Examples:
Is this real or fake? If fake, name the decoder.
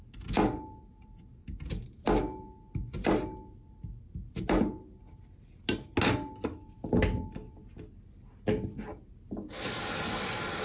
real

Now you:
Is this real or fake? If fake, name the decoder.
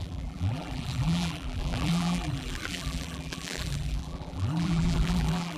fake, vocoder, BigVGAN v2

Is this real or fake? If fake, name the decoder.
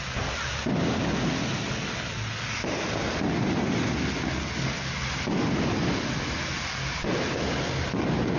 real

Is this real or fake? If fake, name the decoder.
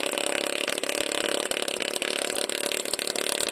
real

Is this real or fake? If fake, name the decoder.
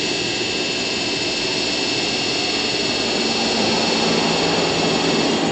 real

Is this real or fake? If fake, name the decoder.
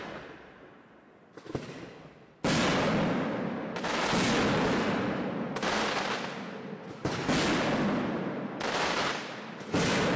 real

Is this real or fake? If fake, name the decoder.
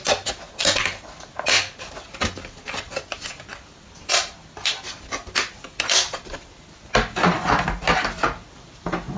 real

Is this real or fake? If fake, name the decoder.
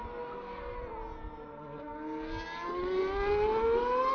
real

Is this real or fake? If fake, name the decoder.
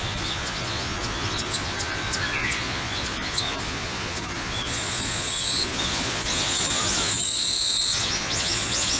fake, vocoder, Vocos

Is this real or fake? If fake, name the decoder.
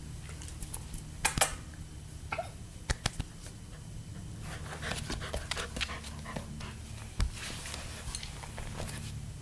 real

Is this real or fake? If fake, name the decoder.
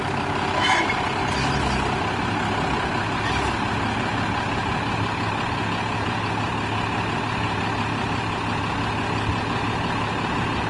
real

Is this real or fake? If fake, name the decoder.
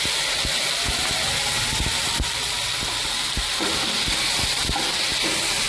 real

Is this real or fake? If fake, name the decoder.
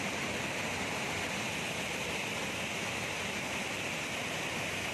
real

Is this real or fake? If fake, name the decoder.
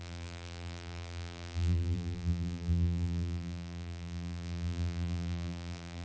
fake, vocoder, BigVGAN v2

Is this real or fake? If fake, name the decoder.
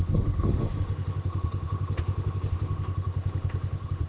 fake, autoencoder, DAC-VAE